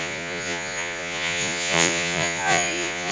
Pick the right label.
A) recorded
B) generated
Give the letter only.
B